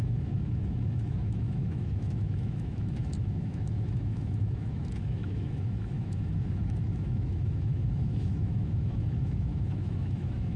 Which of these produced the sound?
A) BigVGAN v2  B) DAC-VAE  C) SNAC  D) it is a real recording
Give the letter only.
B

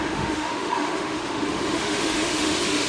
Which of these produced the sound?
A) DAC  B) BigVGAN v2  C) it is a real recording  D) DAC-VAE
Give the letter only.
D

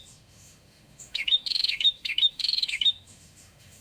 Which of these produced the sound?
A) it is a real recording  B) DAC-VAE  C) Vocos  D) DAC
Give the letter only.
B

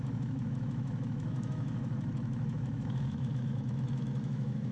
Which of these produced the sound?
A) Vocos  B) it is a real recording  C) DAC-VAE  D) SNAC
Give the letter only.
C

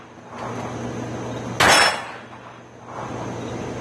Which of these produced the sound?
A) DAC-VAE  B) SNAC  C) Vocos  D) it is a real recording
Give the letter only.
D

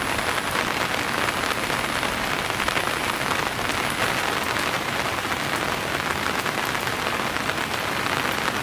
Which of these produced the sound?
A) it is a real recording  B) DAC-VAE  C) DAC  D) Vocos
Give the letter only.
A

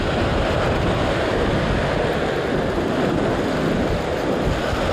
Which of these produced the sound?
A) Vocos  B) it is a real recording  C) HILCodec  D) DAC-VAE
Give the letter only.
B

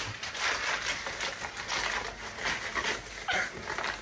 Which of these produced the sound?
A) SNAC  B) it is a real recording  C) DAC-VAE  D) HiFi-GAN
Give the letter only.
B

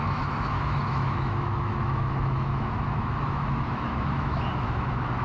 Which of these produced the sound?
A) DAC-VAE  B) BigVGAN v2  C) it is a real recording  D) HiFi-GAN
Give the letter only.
A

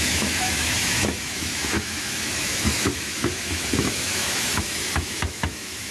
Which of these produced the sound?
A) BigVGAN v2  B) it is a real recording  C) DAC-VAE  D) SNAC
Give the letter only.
C